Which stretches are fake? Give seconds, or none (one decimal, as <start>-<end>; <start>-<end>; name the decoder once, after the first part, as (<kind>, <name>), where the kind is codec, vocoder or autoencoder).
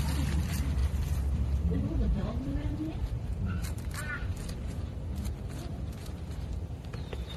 0.8-3.2 (vocoder, BigVGAN v2); 4.3-4.8; 6.0-6.5